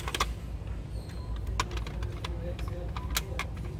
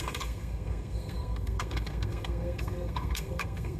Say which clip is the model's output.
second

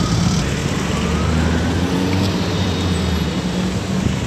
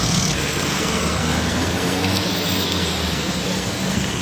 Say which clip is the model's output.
second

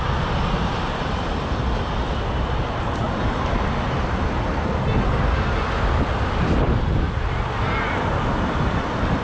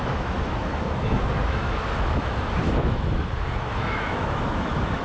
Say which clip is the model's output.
second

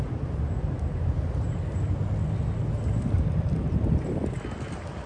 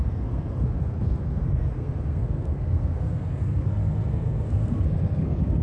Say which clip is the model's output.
second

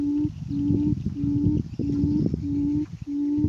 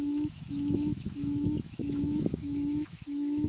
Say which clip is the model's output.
second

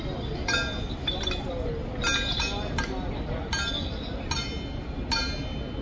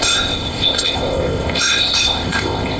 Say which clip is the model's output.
second